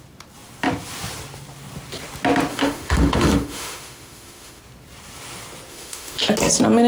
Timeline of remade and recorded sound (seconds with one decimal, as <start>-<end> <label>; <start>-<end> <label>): 0.0-2.5 recorded; 2.5-4.6 remade; 4.6-5.7 recorded; 5.7-6.2 remade; 6.2-6.9 recorded